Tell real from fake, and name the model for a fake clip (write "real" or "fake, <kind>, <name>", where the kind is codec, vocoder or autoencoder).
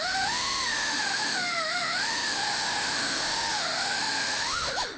fake, autoencoder, DAC-VAE